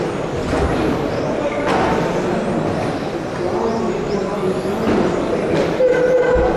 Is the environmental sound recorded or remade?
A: recorded